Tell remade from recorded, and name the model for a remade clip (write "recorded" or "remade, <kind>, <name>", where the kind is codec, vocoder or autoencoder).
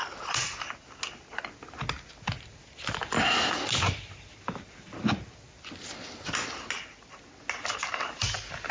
recorded